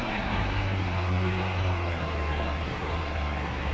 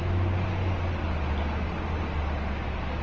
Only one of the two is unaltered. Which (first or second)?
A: second